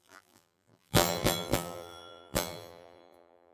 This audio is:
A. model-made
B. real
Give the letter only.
A